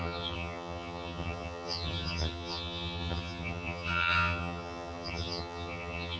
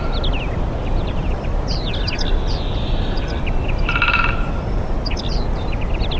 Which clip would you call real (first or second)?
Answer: second